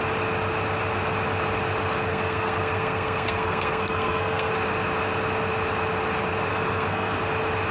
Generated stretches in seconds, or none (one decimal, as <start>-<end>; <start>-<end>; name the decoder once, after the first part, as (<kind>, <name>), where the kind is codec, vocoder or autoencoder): 2.1-4.5 (codec, SNAC); 6.5-7.2